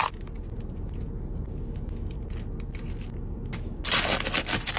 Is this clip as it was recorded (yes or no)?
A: yes